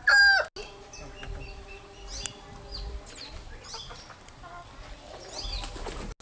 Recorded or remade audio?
recorded